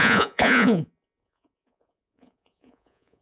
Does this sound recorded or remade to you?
remade